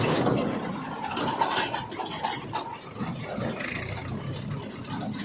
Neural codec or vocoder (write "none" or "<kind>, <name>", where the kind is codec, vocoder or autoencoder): none